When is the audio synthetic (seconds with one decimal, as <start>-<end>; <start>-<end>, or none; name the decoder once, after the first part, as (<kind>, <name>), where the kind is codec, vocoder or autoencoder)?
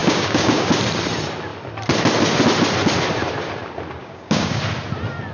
0.0-0.7 (codec, DAC); 4.0-4.6